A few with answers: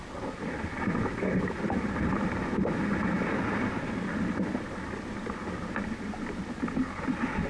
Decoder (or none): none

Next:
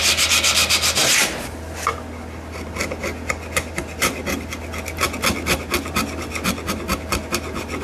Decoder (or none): none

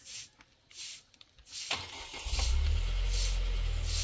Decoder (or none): none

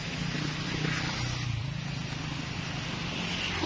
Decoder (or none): none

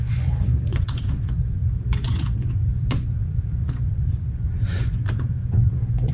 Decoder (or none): vocoder, Vocos